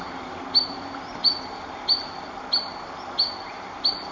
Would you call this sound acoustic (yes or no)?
yes